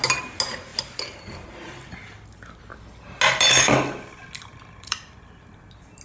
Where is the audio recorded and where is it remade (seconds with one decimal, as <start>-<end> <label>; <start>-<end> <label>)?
0.0-4.5 recorded; 4.5-5.6 remade; 5.6-6.0 recorded